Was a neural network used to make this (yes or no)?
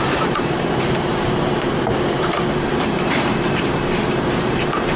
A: yes